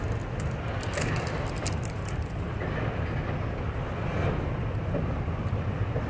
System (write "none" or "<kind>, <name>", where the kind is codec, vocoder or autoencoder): none